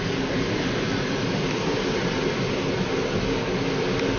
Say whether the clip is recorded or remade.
recorded